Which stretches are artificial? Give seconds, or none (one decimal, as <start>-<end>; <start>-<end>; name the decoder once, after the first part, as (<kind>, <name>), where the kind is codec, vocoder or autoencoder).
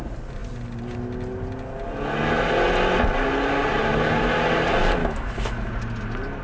5.0-5.7 (autoencoder, DAC-VAE)